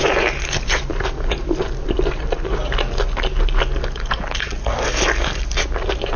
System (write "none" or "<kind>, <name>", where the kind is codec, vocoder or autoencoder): none